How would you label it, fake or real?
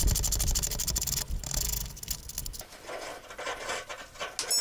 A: real